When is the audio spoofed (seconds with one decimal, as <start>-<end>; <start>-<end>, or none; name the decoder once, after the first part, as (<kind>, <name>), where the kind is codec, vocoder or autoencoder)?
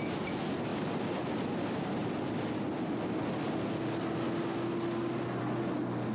0.7-1.4 (vocoder, BigVGAN v2)